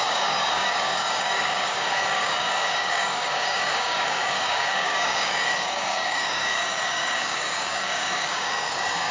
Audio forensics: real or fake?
fake